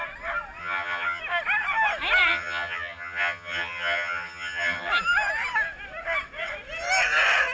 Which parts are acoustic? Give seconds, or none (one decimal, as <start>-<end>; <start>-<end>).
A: 0.0-0.6; 1.2-2.3; 4.9-7.5